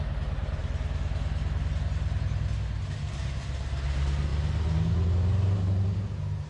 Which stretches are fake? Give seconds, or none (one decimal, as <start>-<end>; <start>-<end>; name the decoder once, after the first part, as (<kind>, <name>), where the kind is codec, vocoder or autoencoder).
none